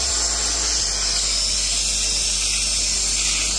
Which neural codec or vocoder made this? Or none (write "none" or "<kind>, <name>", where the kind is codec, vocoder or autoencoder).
none